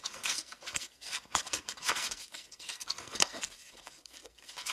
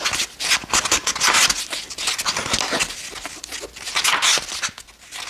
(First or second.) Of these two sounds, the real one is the second